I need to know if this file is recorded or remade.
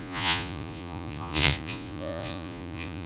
remade